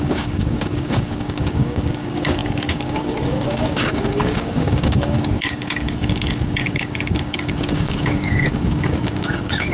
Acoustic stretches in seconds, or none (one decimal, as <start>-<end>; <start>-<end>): none